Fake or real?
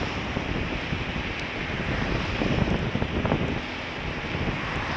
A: real